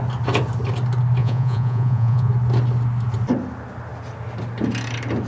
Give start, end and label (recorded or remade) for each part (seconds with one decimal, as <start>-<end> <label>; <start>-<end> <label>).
0.0-1.2 recorded; 1.2-2.3 remade; 2.3-5.3 recorded